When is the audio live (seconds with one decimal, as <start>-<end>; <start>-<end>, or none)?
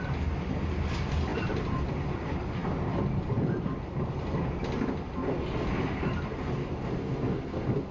0.0-7.0